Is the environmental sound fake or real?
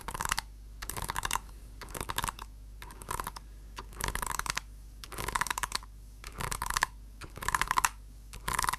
fake